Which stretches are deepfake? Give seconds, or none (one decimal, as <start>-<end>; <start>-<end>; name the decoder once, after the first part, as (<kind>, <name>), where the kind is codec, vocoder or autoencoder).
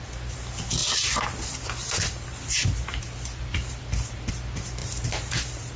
0.8-4.3 (vocoder, BigVGAN v2); 4.8-5.3